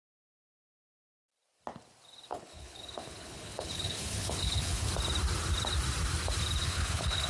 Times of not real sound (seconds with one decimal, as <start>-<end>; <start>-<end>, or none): 2.3-4.9; 6.6-7.3